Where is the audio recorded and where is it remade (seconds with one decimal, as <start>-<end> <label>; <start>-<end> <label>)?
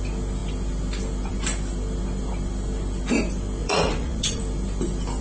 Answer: 0.0-3.6 recorded; 3.6-4.4 remade; 4.4-5.2 recorded